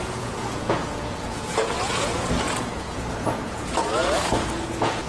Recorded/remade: remade